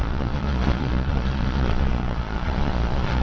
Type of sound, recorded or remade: remade